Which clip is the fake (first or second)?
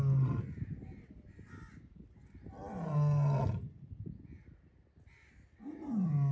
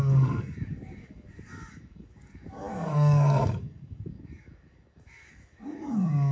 second